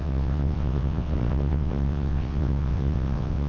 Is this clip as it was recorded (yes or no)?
no